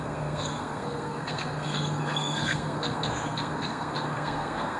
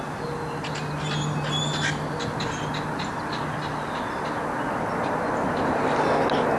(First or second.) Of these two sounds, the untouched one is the second